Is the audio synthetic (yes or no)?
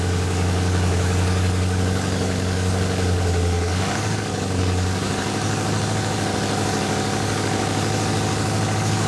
yes